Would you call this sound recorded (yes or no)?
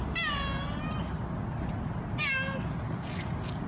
yes